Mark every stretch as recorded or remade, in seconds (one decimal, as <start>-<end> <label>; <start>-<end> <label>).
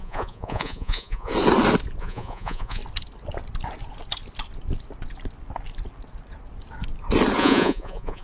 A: 0.0-1.3 remade; 1.3-2.0 recorded; 2.0-2.8 remade; 2.8-7.4 recorded; 7.4-8.2 remade